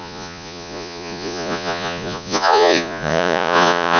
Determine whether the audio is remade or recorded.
remade